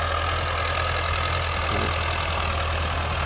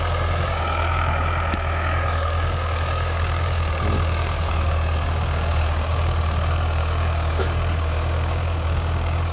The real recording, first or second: first